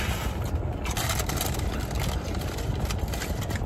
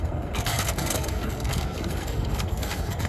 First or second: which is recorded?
first